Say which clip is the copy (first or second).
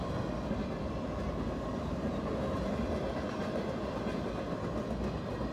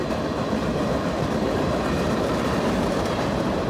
second